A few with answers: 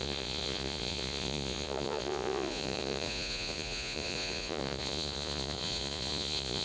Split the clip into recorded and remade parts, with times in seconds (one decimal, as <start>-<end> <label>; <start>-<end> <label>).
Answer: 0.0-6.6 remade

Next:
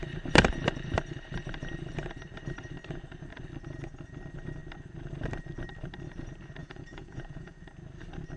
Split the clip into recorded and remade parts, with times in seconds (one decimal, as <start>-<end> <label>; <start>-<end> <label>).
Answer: 0.0-6.6 recorded; 6.6-7.6 remade; 7.6-8.4 recorded

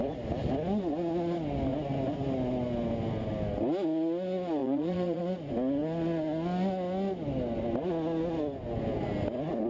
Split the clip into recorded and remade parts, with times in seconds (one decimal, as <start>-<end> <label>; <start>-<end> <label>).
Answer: 0.0-4.6 recorded; 4.6-5.2 remade; 5.2-9.7 recorded

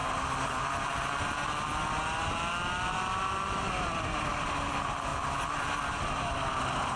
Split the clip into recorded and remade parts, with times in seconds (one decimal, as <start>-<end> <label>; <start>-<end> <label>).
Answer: 0.0-7.0 recorded

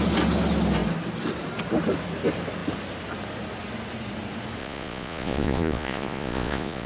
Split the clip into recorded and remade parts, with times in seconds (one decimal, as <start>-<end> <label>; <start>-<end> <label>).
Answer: 0.0-4.6 recorded; 4.6-6.9 remade

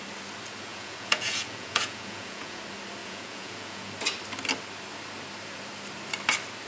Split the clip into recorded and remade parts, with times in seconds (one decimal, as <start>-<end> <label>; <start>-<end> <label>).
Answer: 0.0-0.7 recorded; 0.7-2.6 remade; 2.6-3.0 recorded; 3.0-3.9 remade; 3.9-6.7 recorded

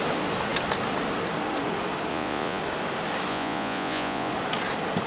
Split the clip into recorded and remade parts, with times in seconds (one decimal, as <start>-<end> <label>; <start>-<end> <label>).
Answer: 0.0-2.1 recorded; 2.1-2.6 remade; 2.6-3.3 recorded; 3.3-4.3 remade; 4.3-5.1 recorded